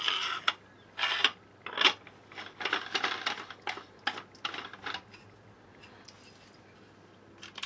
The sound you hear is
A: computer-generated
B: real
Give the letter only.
B